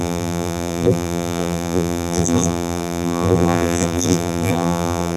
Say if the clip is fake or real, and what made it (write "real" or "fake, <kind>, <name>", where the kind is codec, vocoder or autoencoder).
fake, vocoder, BigVGAN v2